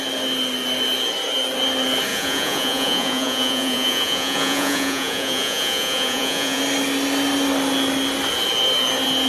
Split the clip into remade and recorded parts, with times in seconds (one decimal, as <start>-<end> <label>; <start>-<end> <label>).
0.0-2.1 recorded; 2.1-6.6 remade; 6.6-9.3 recorded